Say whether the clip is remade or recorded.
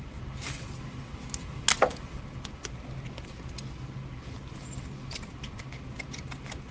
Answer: recorded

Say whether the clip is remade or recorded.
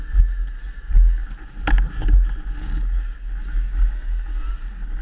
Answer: recorded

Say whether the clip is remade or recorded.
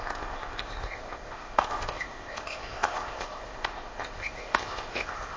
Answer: remade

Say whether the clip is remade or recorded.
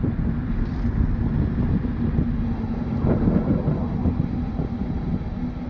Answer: recorded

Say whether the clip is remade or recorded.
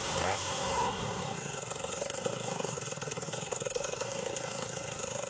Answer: remade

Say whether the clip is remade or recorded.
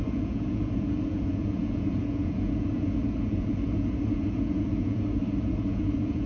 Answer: remade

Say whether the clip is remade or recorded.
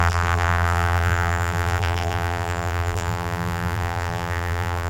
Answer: remade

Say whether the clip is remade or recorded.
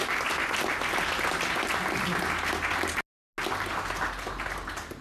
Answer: recorded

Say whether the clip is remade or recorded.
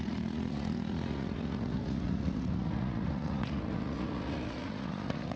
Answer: remade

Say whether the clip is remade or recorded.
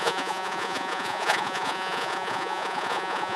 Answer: remade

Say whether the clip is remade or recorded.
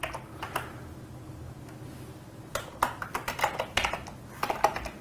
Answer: recorded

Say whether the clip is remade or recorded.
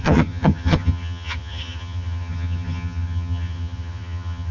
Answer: remade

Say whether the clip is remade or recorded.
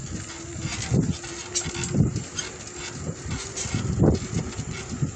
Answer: recorded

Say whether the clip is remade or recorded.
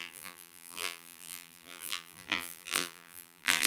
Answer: remade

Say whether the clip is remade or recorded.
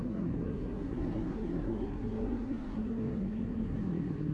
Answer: remade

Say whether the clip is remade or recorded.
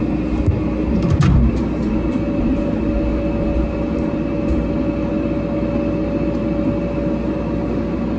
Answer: recorded